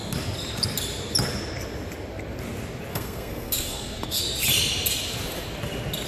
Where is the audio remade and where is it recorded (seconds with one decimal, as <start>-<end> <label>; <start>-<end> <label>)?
0.0-2.9 recorded; 2.9-4.2 remade; 4.2-6.1 recorded